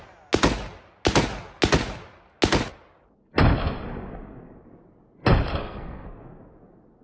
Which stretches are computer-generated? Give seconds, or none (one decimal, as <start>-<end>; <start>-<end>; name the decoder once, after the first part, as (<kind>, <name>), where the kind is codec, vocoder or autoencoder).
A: 5.6-6.2 (codec, SNAC)